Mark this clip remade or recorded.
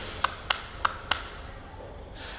recorded